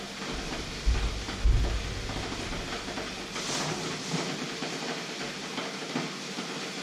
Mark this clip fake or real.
real